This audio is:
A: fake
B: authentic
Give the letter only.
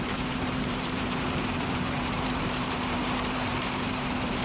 A